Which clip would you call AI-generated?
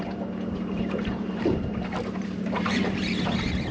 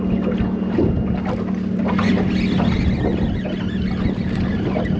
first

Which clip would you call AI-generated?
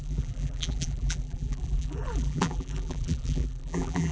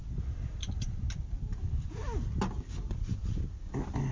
first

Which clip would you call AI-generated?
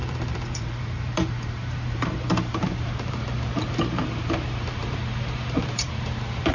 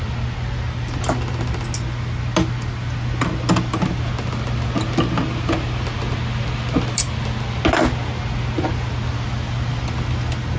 first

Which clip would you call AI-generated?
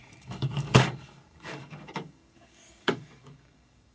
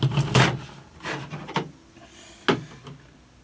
first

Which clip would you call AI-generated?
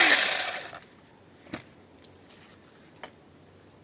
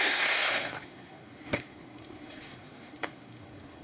second